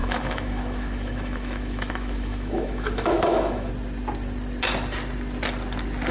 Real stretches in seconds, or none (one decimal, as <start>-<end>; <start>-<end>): 3.7-6.1